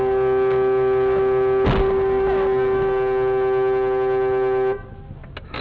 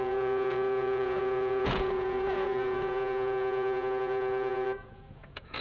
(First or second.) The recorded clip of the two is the first